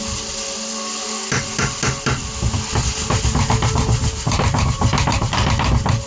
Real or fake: real